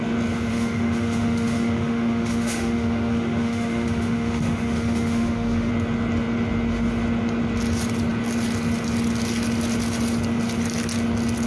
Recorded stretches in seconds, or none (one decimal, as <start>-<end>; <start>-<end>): 0.0-0.5; 5.7-11.5